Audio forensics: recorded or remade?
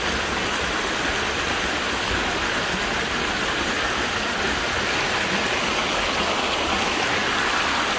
recorded